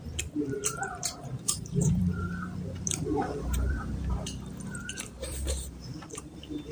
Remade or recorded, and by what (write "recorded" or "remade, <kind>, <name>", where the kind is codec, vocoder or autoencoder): remade, vocoder, BigVGAN v2